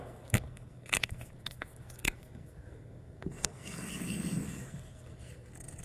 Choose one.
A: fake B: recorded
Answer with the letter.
A